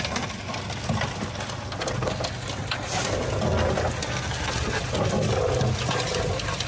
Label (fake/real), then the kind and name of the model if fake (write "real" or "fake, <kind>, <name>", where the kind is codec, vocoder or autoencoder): real